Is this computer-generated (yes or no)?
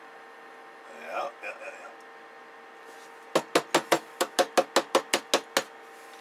no